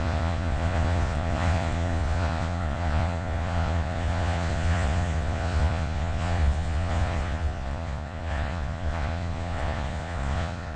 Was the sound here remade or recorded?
remade